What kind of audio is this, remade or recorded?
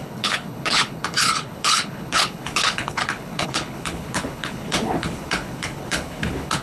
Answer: remade